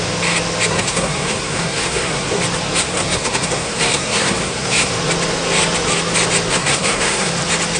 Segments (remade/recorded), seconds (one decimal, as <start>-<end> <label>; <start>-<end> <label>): 0.0-0.7 recorded; 0.7-2.4 remade; 2.4-2.8 recorded; 2.8-4.9 remade; 4.9-6.5 recorded; 6.5-7.3 remade; 7.3-7.8 recorded